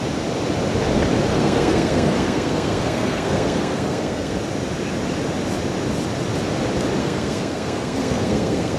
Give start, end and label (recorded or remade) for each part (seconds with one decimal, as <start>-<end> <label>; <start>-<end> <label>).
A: 0.0-1.3 recorded; 1.3-4.4 remade; 4.4-7.0 recorded; 7.0-8.8 remade